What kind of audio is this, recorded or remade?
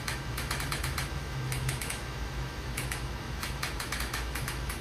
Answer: remade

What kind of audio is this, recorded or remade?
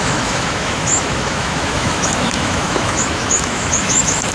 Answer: remade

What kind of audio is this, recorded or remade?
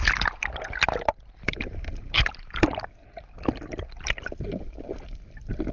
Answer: recorded